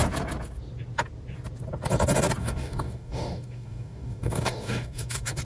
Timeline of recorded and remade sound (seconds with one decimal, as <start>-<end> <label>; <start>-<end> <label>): 0.0-2.4 recorded; 2.4-5.4 remade